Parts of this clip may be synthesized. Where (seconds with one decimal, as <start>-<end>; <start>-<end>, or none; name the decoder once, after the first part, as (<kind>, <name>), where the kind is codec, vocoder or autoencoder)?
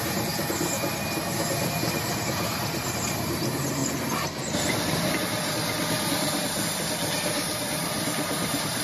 0.0-3.8 (vocoder, BigVGAN v2); 6.1-8.8